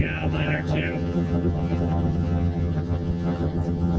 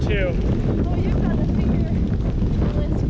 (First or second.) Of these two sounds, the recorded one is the second